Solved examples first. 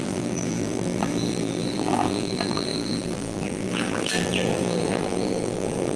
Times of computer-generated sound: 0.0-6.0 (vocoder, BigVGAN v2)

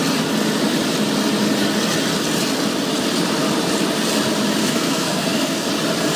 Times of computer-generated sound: 4.6-5.7 (codec, SNAC)

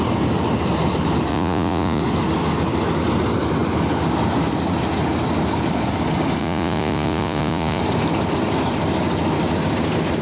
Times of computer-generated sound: 1.3-2.0 (vocoder, Vocos); 6.4-7.8

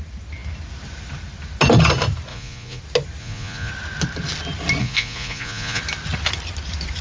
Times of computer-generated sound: 2.3-2.8 (vocoder, Vocos); 3.2-3.7; 4.8-5.8

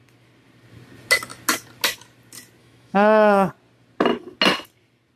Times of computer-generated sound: 2.6-3.5 (autoencoder, DAC-VAE)

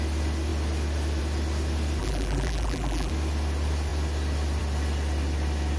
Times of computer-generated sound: 2.0-3.1 (vocoder, BigVGAN v2)